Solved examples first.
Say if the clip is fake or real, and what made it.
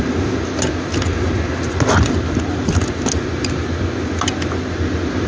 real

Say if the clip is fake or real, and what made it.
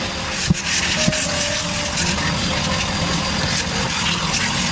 real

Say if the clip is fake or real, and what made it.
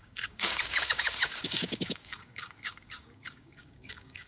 fake, codec, DAC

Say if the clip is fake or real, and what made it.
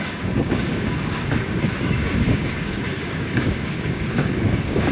fake, codec, DAC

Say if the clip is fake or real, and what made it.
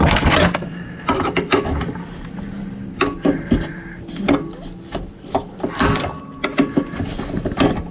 real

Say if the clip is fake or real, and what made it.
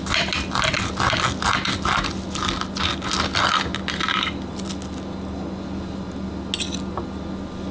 real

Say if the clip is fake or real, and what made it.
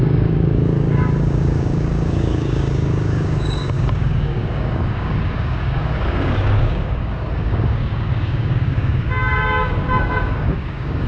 fake, codec, DAC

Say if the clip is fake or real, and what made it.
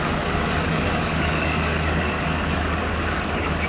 fake, codec, DAC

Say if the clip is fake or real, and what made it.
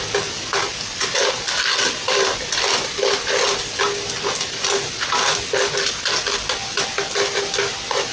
real